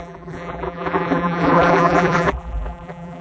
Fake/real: fake